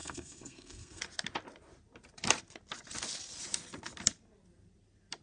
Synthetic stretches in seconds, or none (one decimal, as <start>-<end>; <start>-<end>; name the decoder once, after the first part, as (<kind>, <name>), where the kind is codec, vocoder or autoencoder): 0.0-1.0 (codec, SNAC)